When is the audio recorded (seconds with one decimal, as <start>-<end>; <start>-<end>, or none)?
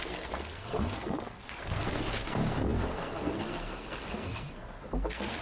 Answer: none